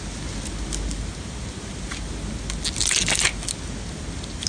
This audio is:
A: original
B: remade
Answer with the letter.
A